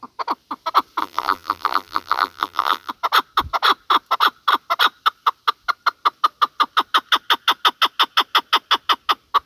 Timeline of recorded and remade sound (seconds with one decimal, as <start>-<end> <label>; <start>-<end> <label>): 0.0-1.0 recorded; 1.0-2.9 remade; 2.9-9.5 recorded